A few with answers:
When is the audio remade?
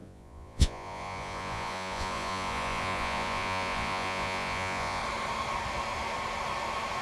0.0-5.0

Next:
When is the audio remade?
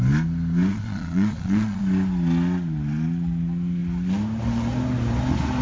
0.7-1.8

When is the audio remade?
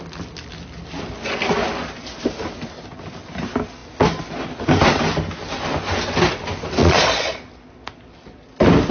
6.8-7.4